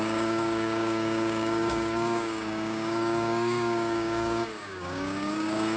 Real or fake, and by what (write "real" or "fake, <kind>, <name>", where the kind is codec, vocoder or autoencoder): fake, codec, DAC